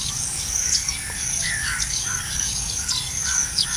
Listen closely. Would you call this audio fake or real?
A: fake